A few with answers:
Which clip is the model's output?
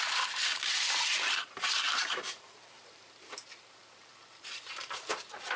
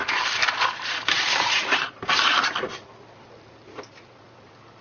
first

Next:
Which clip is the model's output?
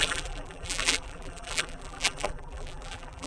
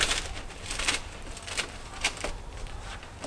first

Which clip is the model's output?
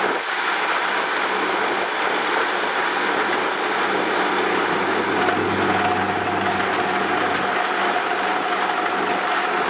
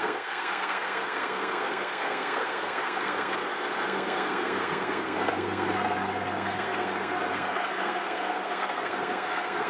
second